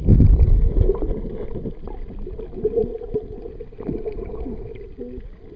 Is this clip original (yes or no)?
yes